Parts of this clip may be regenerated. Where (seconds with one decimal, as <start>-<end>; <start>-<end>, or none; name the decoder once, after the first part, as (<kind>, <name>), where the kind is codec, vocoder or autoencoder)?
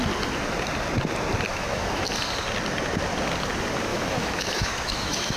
1.5-2.1 (autoencoder, DAC-VAE); 3.9-5.4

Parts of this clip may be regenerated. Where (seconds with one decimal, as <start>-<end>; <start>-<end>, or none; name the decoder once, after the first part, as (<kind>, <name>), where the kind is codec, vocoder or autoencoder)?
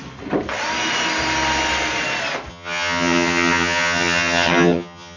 2.5-5.2 (vocoder, HiFi-GAN)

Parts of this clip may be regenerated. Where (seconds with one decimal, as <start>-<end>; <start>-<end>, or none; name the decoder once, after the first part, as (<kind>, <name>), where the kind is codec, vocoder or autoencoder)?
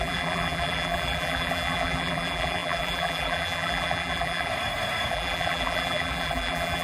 0.0-4.5 (vocoder, BigVGAN v2); 5.1-6.8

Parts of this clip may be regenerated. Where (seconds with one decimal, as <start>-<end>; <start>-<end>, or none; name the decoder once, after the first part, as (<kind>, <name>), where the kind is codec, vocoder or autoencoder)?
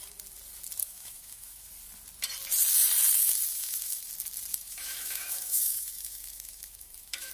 0.8-1.7 (autoencoder, DAC-VAE); 3.5-4.1; 4.5-7.3